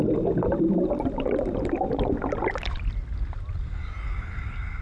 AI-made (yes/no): no